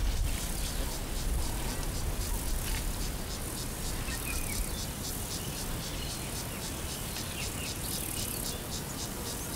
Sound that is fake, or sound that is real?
real